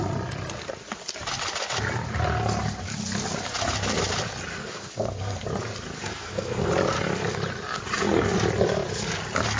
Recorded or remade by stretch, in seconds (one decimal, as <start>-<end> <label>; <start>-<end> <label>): 0.0-4.6 recorded; 4.6-5.4 remade; 5.4-6.1 recorded; 6.1-6.7 remade; 6.7-9.6 recorded